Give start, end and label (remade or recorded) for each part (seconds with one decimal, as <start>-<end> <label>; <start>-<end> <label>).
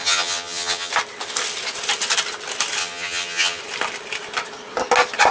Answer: 0.0-0.9 remade; 0.9-2.8 recorded; 2.8-3.6 remade; 3.6-5.3 recorded